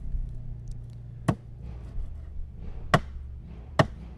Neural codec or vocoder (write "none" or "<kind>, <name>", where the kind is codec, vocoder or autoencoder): none